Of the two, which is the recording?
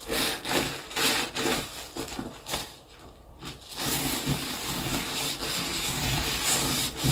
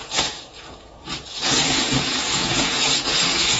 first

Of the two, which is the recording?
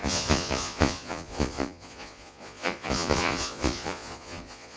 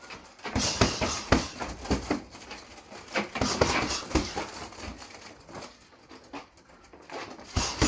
second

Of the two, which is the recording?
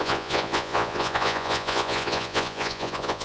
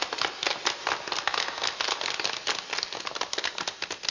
second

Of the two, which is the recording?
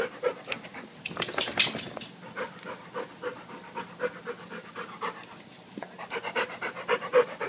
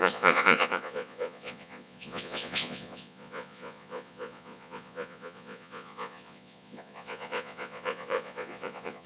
first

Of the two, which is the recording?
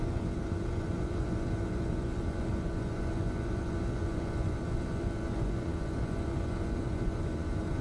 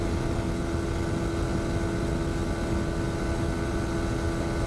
second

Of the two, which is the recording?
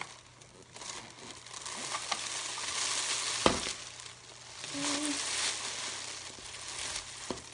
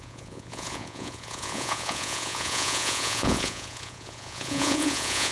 first